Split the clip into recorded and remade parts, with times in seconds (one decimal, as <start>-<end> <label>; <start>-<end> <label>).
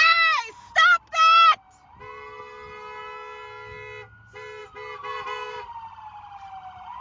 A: 0.0-7.0 recorded